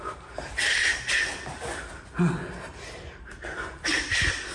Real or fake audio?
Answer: real